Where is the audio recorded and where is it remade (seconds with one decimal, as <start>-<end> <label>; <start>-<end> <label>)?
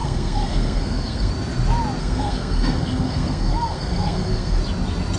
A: 0.0-1.3 remade; 1.3-2.0 recorded; 2.0-4.6 remade; 4.6-5.2 recorded